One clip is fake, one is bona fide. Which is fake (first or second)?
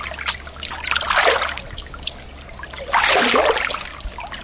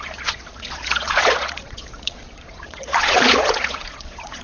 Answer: second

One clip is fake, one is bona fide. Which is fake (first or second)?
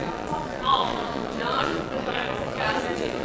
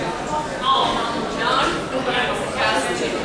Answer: first